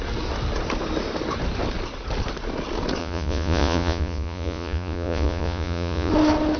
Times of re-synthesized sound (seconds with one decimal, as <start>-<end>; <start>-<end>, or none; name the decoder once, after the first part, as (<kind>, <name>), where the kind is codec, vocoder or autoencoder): 3.0-6.1 (vocoder, Vocos)